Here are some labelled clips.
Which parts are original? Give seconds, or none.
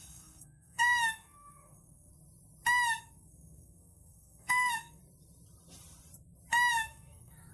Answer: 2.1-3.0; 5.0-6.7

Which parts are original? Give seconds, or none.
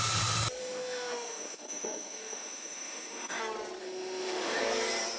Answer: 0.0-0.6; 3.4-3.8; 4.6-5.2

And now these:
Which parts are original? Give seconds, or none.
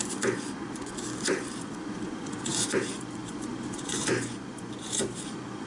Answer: none